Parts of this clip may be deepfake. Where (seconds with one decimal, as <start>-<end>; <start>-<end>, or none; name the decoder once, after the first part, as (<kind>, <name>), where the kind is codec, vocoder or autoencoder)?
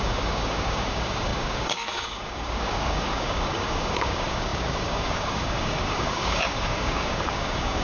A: 0.0-7.8 (codec, DAC)